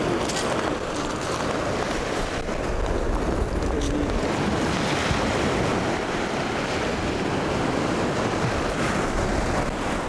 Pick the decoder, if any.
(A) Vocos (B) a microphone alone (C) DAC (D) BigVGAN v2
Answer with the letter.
B